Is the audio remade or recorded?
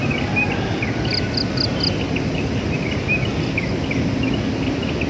recorded